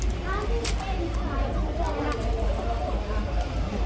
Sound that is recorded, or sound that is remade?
recorded